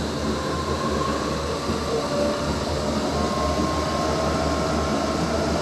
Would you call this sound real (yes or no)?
yes